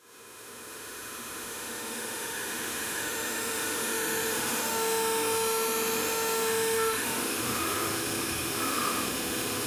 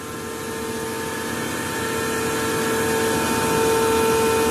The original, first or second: second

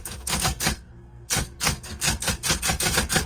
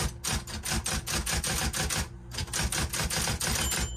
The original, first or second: second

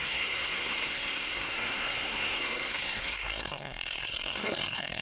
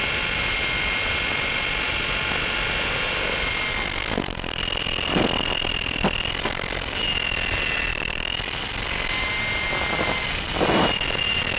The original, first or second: second